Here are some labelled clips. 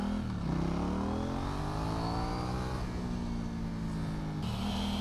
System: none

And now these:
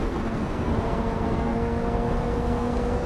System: codec, SNAC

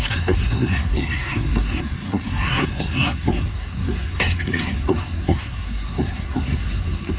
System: codec, SNAC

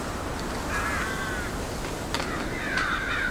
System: none